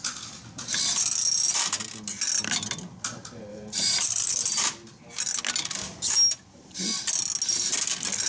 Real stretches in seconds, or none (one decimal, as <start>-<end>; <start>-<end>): 0.0-3.5; 4.3-8.3